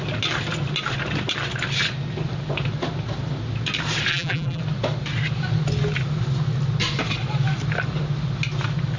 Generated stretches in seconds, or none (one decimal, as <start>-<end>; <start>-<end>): 4.1-4.6